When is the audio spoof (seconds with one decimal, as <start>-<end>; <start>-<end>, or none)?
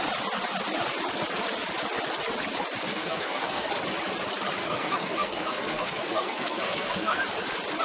2.9-3.7; 4.6-7.2